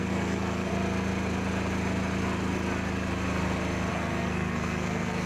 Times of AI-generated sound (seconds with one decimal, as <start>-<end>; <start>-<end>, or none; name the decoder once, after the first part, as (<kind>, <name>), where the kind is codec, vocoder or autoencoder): 0.0-0.7 (codec, SNAC); 3.9-5.3